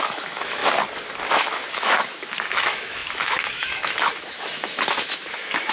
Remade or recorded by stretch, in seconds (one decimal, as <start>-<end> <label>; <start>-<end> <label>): 0.0-0.6 remade; 0.6-1.3 recorded; 1.3-5.7 remade